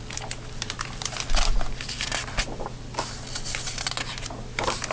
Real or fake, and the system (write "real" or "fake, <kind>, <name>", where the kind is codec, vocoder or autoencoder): real